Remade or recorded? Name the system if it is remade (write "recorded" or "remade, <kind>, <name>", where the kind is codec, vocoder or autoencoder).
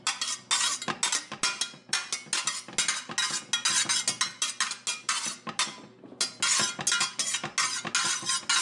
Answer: recorded